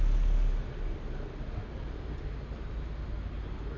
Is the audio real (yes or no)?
yes